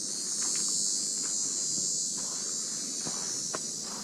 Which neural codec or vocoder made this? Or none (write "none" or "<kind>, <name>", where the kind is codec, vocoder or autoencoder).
none